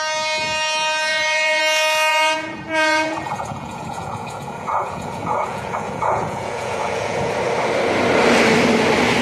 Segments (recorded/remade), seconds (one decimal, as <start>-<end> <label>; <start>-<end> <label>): 0.0-1.1 recorded; 1.1-1.6 remade; 1.6-2.1 recorded; 2.1-7.3 remade; 7.3-9.2 recorded